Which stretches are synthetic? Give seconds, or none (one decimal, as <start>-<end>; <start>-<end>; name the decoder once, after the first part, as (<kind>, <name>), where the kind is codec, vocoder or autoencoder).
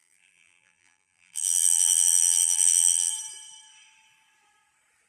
0.0-3.1 (vocoder, BigVGAN v2)